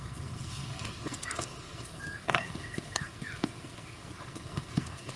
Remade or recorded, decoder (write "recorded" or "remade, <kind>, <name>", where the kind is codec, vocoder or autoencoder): remade, codec, SNAC